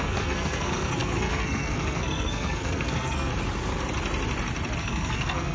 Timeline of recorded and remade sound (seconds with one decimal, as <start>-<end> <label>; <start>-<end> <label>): 0.0-3.3 remade; 3.3-4.8 recorded; 4.8-5.5 remade